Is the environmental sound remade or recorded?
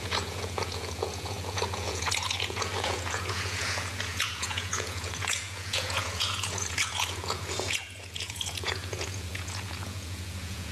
remade